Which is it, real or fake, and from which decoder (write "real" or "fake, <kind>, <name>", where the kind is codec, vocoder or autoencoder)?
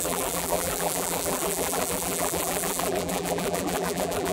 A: fake, vocoder, BigVGAN v2